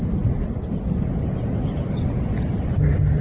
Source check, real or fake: real